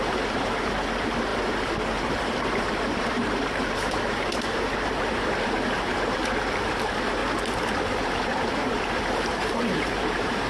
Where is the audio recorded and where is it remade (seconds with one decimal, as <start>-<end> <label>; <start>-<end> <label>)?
0.0-7.2 remade; 7.2-7.8 recorded; 7.8-10.5 remade